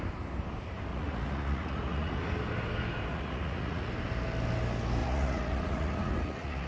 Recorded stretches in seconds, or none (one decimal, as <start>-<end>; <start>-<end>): 0.0-0.9; 2.2-3.1; 3.9-5.0